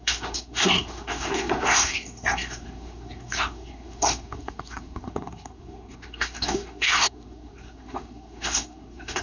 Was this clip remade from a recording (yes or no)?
yes